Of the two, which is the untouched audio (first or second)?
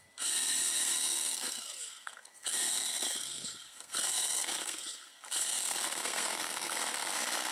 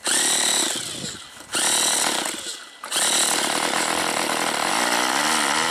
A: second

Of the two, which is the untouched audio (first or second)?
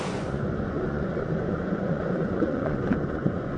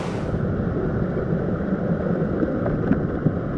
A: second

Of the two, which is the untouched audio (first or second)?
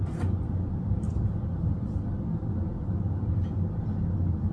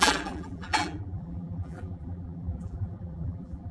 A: first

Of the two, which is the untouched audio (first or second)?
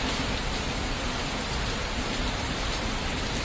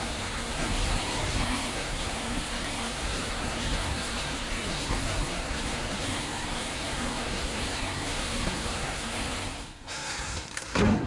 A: first